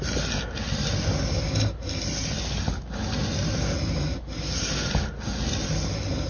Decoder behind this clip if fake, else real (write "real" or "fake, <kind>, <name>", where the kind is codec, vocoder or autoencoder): real